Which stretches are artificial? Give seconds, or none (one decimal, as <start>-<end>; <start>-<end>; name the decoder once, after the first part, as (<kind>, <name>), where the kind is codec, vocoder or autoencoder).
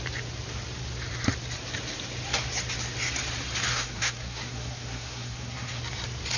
3.7-5.8 (codec, SNAC)